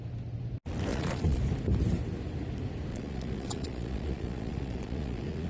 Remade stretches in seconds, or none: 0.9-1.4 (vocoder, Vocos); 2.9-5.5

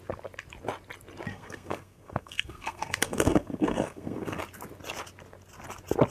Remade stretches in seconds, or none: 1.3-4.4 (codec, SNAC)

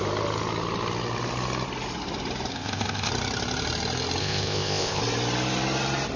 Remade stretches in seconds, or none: 2.5-3.1 (codec, ZipCodec); 4.2-5.0